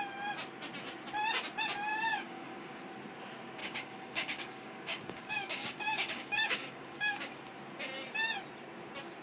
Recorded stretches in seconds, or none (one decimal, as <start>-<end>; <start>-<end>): 0.0-1.9; 2.8-3.6; 7.4-9.2

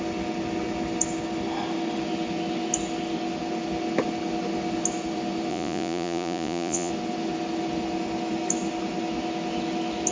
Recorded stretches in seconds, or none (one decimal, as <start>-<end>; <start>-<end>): 0.0-5.5; 6.9-10.1